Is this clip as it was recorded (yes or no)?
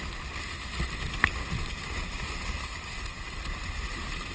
yes